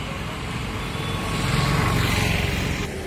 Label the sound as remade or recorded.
recorded